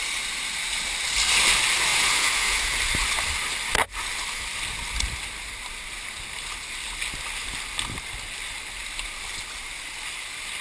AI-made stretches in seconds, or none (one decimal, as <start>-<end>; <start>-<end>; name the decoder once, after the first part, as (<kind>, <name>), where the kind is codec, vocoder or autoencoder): 1.9-2.8 (vocoder, Vocos)